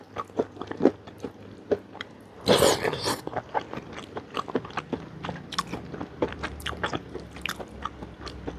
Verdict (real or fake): real